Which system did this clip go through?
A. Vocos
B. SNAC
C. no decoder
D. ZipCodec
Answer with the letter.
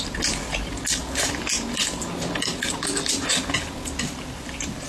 C